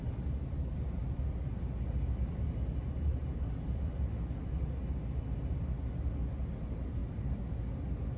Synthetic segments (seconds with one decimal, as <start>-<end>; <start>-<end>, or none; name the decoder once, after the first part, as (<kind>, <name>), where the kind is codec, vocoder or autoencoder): none